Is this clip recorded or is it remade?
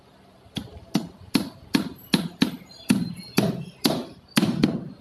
remade